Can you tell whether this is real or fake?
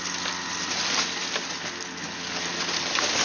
real